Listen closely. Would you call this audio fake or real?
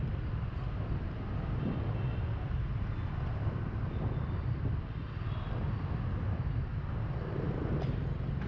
real